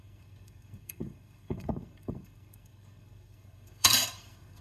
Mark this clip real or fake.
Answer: fake